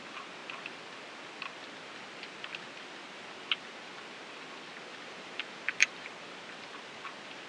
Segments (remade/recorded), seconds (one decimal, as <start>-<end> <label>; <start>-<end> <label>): 0.0-4.9 recorded; 4.9-6.1 remade; 6.1-7.5 recorded